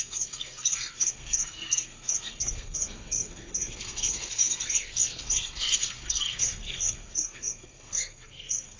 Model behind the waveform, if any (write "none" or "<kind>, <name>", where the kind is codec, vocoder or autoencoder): codec, SNAC